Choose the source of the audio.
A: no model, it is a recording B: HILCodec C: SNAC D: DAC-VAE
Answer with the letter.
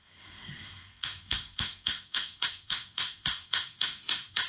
C